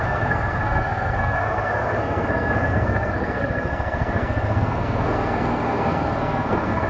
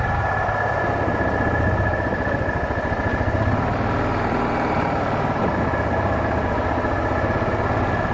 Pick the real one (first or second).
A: second